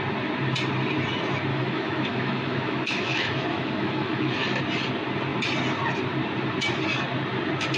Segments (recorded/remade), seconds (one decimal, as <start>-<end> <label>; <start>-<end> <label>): 0.0-1.5 recorded; 1.5-4.6 remade; 4.6-7.8 recorded